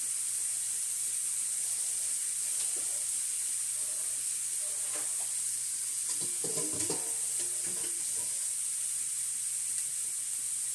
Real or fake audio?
real